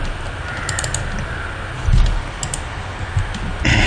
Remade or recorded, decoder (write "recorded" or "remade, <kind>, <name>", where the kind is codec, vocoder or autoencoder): recorded